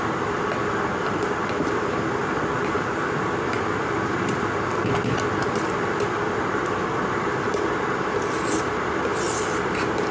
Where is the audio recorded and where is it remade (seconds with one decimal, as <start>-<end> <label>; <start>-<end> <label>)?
0.0-2.2 remade; 2.2-6.0 recorded; 6.0-10.1 remade